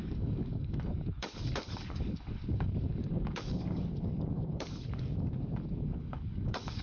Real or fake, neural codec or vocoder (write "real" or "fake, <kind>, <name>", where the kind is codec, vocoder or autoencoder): fake, codec, DAC